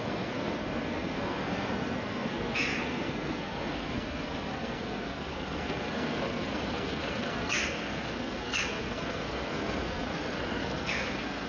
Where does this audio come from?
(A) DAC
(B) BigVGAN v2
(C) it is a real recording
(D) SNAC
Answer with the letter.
D